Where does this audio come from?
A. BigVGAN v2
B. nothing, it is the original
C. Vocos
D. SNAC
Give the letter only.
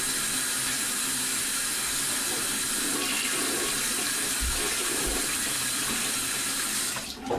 B